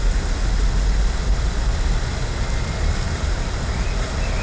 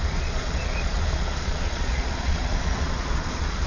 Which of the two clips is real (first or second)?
first